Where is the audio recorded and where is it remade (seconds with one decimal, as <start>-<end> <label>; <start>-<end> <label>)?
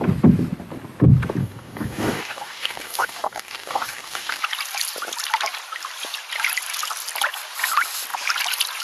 0.0-1.4 recorded; 1.4-4.4 remade; 4.4-8.8 recorded